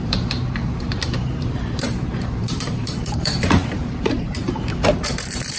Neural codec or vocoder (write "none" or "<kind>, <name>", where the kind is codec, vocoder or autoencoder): vocoder, BigVGAN v2